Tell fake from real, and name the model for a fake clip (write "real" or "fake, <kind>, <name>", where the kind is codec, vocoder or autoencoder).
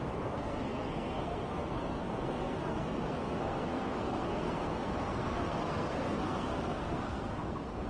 fake, codec, SNAC